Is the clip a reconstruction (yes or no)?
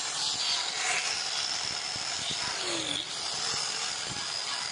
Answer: no